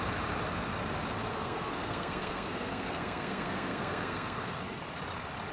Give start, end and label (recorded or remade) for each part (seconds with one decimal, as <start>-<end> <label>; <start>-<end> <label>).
0.0-1.3 recorded; 1.3-4.6 remade; 4.6-5.5 recorded

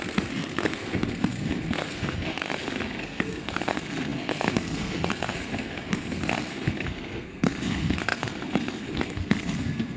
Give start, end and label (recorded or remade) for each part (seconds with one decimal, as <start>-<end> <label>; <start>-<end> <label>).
0.0-10.0 remade

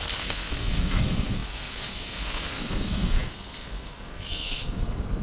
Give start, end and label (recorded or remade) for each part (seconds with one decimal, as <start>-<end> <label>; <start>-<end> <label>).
0.0-5.2 remade

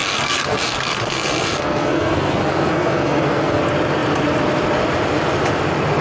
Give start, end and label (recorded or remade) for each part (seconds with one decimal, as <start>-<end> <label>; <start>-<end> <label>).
0.0-3.6 remade; 3.6-6.0 recorded

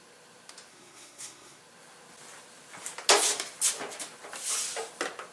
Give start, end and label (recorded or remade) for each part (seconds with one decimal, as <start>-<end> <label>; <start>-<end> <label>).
0.0-0.7 recorded; 0.7-1.6 remade; 1.6-5.3 recorded

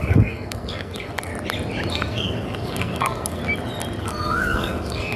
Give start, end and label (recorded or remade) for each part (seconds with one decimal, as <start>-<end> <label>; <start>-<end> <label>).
0.0-1.3 remade; 1.3-1.9 recorded; 1.9-3.4 remade; 3.4-4.0 recorded; 4.0-5.2 remade

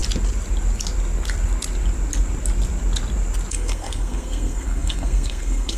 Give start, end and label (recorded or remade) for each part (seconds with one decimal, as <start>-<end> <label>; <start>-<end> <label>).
0.0-3.5 recorded; 3.5-5.8 remade

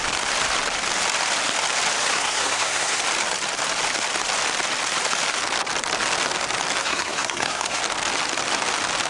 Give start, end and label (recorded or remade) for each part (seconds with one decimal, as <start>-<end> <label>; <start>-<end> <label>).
0.0-2.1 recorded; 2.1-3.0 remade; 3.0-6.8 recorded; 6.8-7.8 remade; 7.8-9.1 recorded